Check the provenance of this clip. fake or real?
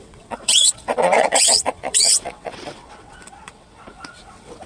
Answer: fake